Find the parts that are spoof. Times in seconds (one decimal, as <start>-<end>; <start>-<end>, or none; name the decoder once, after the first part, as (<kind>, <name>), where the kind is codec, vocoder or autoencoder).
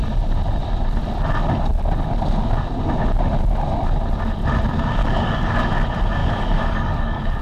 5.0-5.7 (codec, DAC); 6.2-7.4